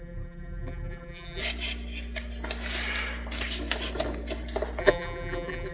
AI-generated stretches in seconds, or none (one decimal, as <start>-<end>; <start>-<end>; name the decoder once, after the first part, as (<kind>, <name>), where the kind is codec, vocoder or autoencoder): 0.0-1.4 (vocoder, BigVGAN v2); 4.8-5.7